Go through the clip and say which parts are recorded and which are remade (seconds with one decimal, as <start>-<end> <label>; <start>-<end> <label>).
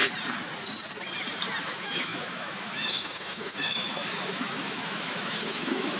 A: 0.0-1.6 recorded; 1.6-6.0 remade